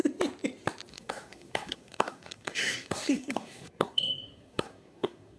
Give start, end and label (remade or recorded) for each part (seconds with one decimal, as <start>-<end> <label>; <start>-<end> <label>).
0.0-0.9 recorded; 0.9-5.4 remade